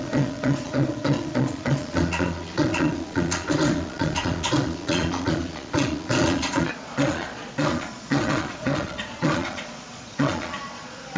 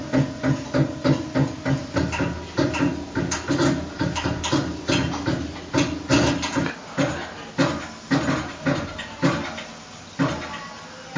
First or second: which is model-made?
first